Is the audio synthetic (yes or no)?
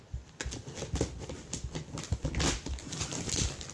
no